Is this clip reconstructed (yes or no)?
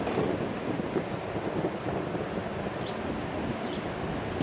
no